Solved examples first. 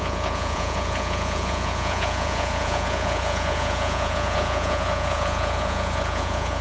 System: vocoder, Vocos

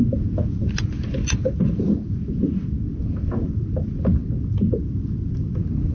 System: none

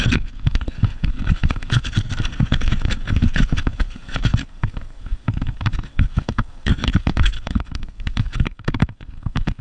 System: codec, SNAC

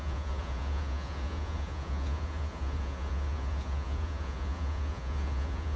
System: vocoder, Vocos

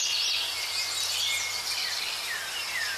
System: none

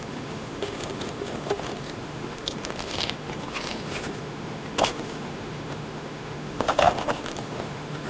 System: autoencoder, DAC-VAE